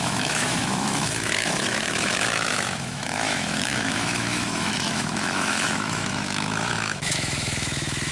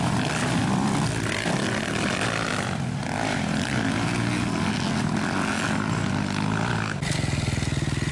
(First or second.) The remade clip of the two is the first